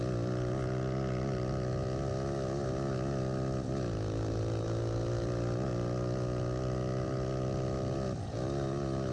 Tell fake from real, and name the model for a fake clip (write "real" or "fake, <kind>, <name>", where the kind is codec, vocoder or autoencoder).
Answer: real